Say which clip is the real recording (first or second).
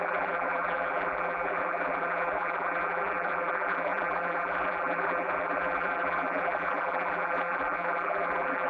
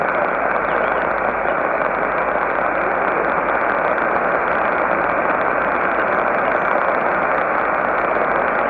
second